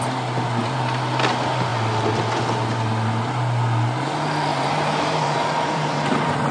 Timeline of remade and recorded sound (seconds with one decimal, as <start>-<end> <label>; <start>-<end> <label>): 0.0-4.5 recorded; 4.5-6.1 remade; 6.1-6.5 recorded